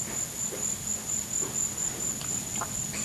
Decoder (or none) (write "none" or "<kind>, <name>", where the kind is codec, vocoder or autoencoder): none